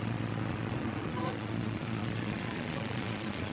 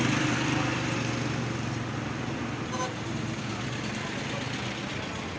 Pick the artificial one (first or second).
first